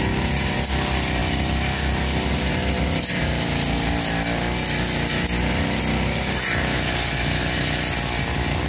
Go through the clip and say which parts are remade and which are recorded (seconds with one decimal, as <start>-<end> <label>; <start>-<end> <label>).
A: 0.0-8.7 recorded